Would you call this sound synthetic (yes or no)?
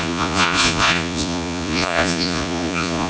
yes